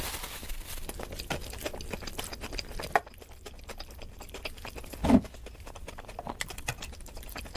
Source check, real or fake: real